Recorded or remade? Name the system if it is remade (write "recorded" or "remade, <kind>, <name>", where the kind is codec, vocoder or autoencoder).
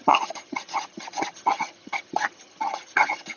remade, vocoder, HiFi-GAN